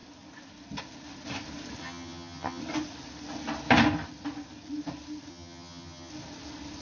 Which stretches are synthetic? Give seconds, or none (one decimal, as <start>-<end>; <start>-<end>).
1.8-2.6; 5.3-6.1